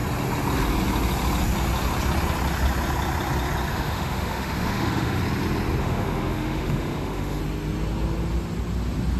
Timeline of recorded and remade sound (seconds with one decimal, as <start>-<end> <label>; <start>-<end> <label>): 0.0-3.7 recorded; 3.7-5.2 remade; 5.2-5.8 recorded; 5.8-7.4 remade; 7.4-9.2 recorded